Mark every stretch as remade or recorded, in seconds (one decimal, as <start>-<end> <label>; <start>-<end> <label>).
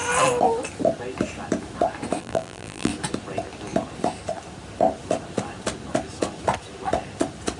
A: 0.0-2.2 recorded; 2.2-2.9 remade; 2.9-7.6 recorded